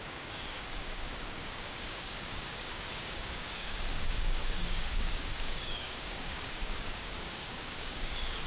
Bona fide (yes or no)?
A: no